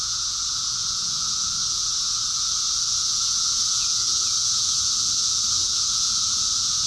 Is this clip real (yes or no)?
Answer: no